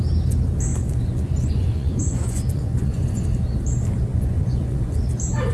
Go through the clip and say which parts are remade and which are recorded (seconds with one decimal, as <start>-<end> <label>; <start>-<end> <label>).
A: 0.0-0.7 recorded; 0.7-3.2 remade; 3.2-4.1 recorded; 4.1-5.0 remade; 5.0-5.5 recorded

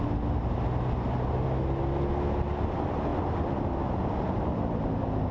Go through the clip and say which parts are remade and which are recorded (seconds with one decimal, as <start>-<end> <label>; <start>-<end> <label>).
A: 0.0-5.3 recorded

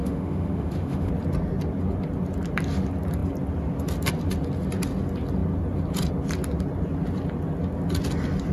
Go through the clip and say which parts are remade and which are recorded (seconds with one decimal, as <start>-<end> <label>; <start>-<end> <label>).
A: 0.0-1.1 remade; 1.1-8.5 recorded

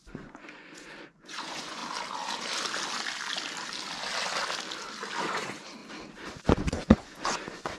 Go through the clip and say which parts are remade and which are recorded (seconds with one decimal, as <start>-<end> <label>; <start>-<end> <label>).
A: 0.0-1.8 remade; 1.8-5.2 recorded; 5.2-5.8 remade; 5.8-6.5 recorded; 6.5-7.8 remade

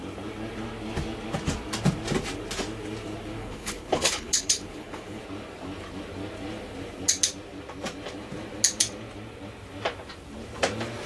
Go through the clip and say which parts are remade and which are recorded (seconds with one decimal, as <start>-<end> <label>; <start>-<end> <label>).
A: 0.0-3.4 recorded; 3.4-5.2 remade; 5.2-11.1 recorded

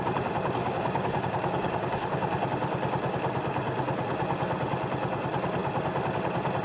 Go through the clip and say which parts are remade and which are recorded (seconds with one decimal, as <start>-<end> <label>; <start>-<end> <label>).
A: 0.0-0.6 recorded; 0.6-2.5 remade; 2.5-6.6 recorded

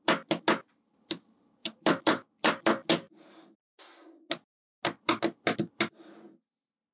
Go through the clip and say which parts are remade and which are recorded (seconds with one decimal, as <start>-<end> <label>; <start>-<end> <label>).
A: 0.0-6.9 recorded